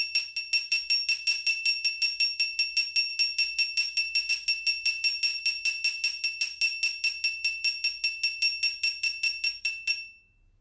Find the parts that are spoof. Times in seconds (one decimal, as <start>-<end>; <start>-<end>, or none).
none